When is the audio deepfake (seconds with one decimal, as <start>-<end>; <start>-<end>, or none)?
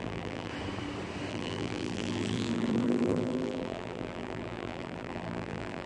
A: 0.0-0.5; 1.3-5.9